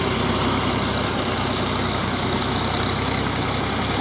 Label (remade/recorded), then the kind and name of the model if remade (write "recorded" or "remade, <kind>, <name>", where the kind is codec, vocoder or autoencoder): recorded